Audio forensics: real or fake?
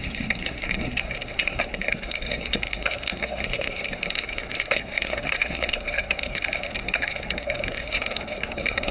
fake